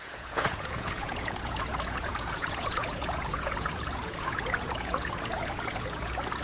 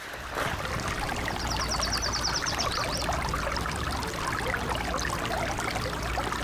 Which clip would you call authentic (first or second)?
second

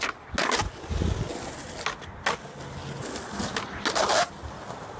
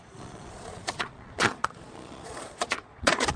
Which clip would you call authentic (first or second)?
first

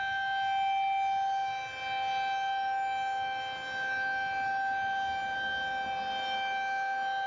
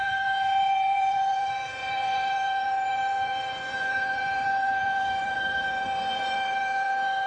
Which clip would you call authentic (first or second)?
first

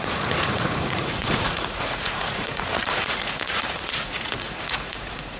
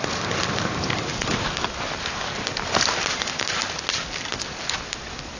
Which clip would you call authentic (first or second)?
second